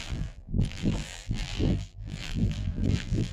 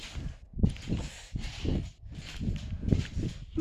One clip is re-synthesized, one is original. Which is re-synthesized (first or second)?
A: first